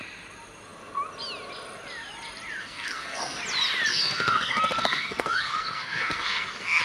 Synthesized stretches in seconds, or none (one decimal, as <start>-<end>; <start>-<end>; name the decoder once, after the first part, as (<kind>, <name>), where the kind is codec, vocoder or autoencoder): 2.6-3.4 (codec, SNAC); 3.9-6.8